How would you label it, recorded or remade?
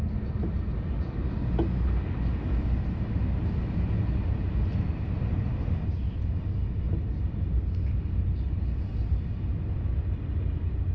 recorded